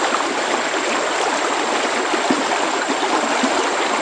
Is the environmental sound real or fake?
real